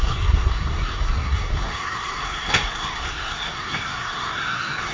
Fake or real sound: fake